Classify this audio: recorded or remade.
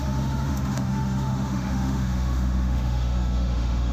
remade